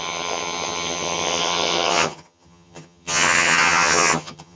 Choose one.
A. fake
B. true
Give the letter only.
A